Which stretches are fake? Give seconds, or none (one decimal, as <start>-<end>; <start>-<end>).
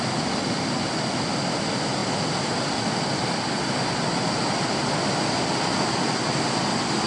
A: 2.0-4.8